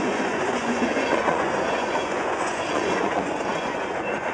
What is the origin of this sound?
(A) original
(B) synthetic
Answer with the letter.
B